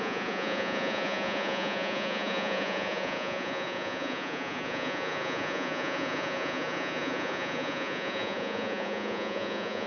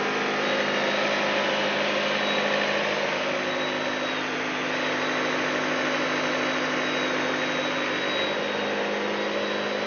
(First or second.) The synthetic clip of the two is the first